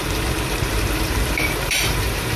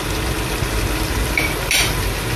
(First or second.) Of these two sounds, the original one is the second